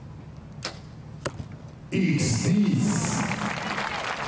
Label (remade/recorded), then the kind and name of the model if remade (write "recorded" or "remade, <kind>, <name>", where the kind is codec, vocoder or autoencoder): recorded